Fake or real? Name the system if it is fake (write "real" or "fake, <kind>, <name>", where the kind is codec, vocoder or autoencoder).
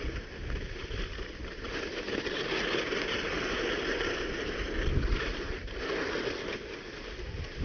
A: real